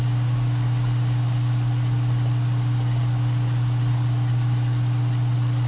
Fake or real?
real